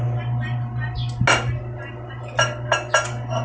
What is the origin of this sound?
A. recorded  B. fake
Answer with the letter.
A